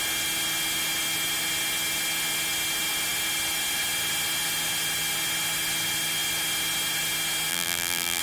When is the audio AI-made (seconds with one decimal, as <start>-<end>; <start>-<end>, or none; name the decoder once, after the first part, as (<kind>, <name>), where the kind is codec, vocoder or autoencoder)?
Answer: 7.5-8.2 (vocoder, BigVGAN v2)